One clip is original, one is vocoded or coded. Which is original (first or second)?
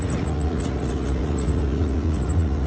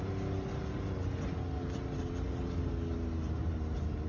second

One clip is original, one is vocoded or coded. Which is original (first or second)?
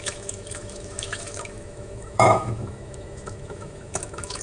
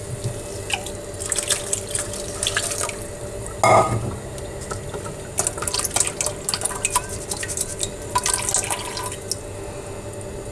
second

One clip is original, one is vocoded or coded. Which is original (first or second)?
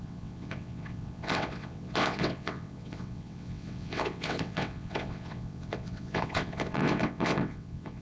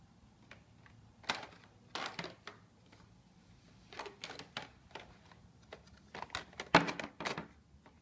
second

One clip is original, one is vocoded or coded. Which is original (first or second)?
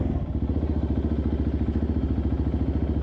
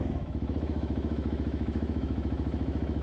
first